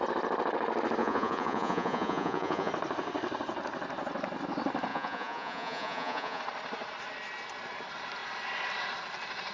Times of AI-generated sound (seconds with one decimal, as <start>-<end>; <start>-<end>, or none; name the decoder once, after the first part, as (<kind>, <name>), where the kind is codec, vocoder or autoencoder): 1.0-2.7 (vocoder, Vocos); 4.9-6.4

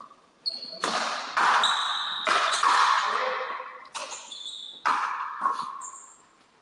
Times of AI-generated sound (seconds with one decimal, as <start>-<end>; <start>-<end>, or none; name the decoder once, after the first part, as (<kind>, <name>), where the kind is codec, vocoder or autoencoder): 1.9-3.6 (vocoder, Vocos); 4.0-6.1